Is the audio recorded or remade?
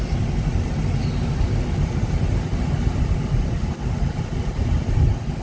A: recorded